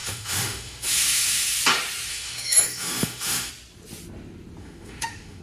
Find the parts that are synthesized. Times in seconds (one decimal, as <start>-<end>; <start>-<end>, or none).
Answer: 0.0-1.6; 2.1-3.5; 4.6-5.4